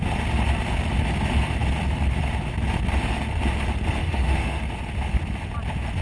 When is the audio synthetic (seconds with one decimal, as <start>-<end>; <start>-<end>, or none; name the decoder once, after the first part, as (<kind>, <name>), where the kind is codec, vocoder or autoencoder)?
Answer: 4.0-4.6 (autoencoder, DAC-VAE)